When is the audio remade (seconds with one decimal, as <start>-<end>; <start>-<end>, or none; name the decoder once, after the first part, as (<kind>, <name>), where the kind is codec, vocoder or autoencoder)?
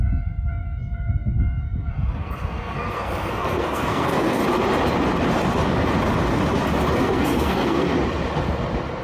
0.0-4.4 (codec, SNAC); 6.9-7.9